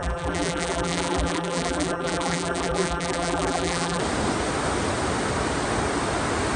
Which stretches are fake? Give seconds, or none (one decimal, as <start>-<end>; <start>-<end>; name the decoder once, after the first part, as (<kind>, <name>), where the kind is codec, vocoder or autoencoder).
0.0-4.0 (vocoder, BigVGAN v2)